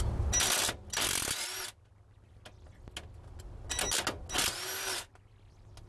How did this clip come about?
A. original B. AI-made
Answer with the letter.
A